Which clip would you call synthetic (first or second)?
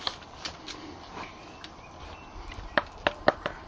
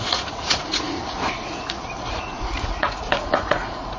second